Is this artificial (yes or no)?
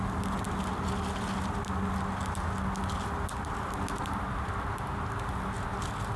no